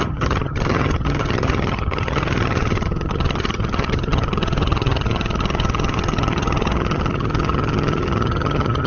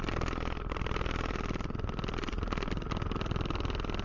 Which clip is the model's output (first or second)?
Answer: first